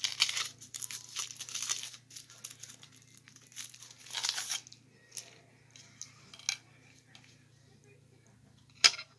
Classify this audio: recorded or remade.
recorded